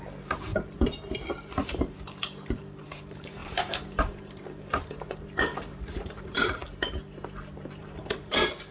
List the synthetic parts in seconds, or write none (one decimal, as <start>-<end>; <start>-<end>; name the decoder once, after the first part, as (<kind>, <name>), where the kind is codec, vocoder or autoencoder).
0.0-6.6 (vocoder, BigVGAN v2); 7.8-8.7